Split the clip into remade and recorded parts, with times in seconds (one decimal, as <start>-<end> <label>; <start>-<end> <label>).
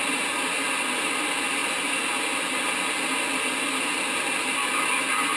0.0-5.4 recorded